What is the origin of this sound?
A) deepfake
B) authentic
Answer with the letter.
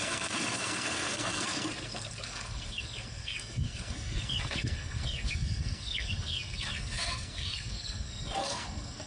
A